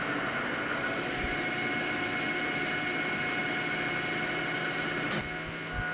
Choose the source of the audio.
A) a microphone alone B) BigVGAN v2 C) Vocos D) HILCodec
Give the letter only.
A